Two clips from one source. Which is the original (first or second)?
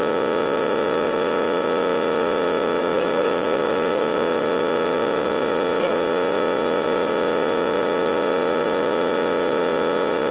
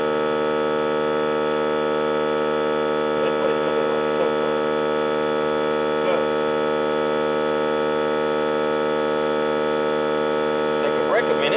second